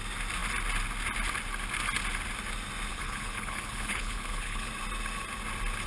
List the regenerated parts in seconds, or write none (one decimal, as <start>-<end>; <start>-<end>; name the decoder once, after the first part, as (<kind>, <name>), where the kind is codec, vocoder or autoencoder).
2.9-4.7 (codec, HILCodec)